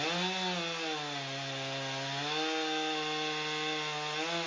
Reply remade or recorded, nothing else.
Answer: recorded